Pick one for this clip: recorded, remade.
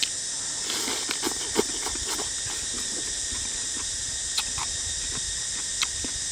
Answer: recorded